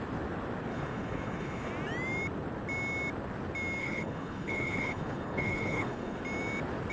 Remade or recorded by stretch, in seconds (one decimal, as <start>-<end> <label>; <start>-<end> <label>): 0.0-0.7 recorded; 0.7-1.7 remade; 1.7-3.8 recorded; 3.8-6.2 remade; 6.2-6.9 recorded